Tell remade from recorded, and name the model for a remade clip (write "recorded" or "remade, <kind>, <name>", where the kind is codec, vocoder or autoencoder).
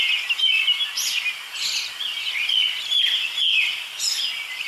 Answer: recorded